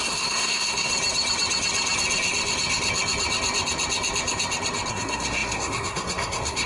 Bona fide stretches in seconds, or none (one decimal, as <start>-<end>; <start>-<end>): 0.9-4.9